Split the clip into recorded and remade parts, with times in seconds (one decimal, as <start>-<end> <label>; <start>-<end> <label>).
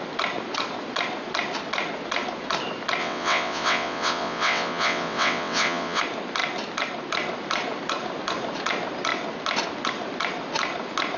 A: 0.0-3.0 recorded; 3.0-6.0 remade; 6.0-11.2 recorded